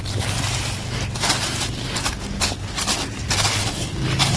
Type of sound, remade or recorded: recorded